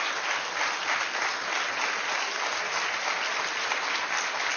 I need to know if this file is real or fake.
real